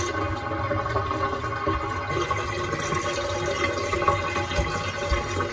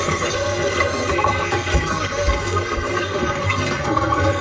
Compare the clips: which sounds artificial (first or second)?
second